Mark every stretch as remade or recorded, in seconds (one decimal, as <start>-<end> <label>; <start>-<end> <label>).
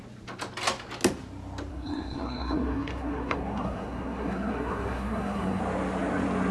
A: 0.0-1.7 recorded; 1.7-5.6 remade; 5.6-6.5 recorded